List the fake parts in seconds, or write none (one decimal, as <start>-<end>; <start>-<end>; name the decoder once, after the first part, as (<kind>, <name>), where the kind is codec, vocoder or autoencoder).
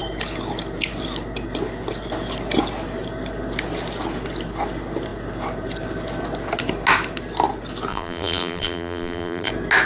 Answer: 7.9-9.5 (vocoder, BigVGAN v2)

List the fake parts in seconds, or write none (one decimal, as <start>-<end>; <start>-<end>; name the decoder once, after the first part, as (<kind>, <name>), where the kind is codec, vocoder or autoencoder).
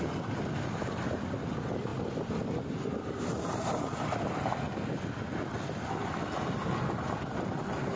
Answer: none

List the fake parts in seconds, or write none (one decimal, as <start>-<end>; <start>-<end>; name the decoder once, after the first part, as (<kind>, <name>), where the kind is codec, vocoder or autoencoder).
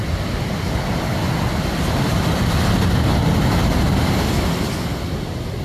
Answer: none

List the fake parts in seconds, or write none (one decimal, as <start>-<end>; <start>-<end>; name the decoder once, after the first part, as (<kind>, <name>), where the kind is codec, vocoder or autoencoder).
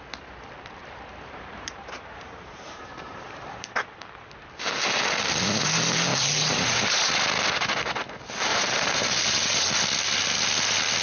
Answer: 0.8-4.3 (vocoder, BigVGAN v2); 6.1-7.1; 8.5-9.6